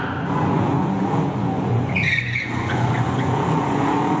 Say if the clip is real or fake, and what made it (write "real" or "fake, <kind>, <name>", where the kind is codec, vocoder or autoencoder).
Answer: fake, vocoder, Vocos